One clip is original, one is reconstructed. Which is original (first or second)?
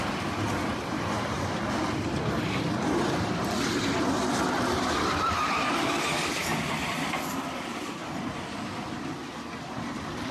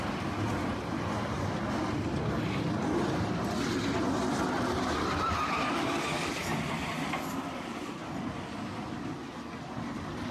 second